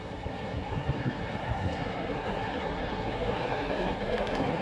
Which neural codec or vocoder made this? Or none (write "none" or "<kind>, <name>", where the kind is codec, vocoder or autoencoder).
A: codec, SNAC